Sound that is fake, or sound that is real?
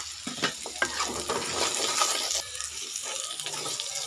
real